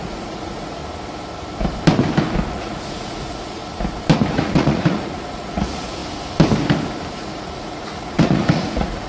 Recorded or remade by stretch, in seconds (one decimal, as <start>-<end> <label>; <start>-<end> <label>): 0.0-0.8 remade; 0.8-2.5 recorded; 2.5-3.6 remade; 3.6-4.3 recorded; 4.3-6.0 remade; 6.0-7.1 recorded; 7.1-9.1 remade